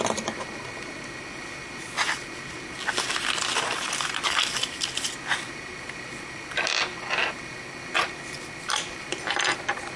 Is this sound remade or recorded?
recorded